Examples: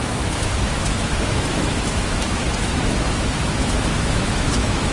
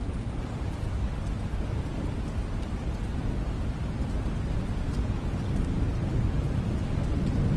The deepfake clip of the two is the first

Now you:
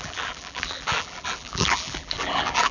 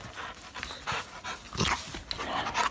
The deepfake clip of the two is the first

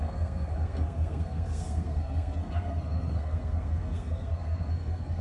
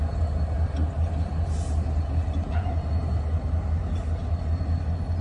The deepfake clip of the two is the first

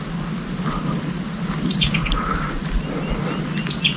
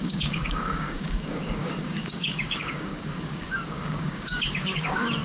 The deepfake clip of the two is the second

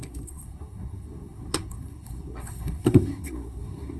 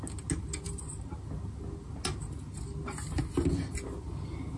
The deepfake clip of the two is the first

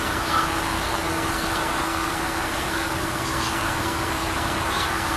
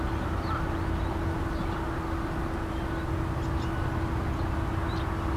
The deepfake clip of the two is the first